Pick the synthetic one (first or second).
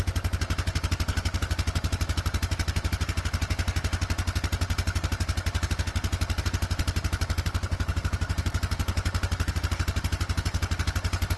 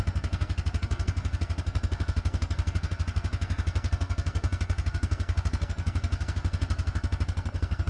second